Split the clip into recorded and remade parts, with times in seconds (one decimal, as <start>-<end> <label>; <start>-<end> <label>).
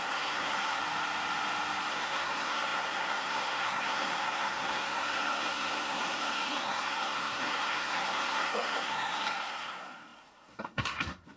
0.0-0.8 remade; 0.8-1.9 recorded; 1.9-11.4 remade